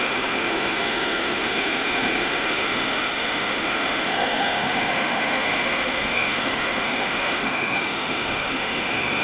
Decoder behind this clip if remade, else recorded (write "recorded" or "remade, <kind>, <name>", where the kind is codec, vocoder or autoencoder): remade, autoencoder, DAC-VAE